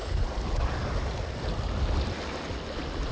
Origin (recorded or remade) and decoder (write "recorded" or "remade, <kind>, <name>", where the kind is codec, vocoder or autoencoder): recorded